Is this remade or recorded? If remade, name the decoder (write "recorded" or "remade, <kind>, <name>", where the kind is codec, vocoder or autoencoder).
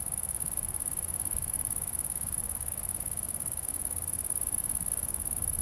remade, autoencoder, DAC-VAE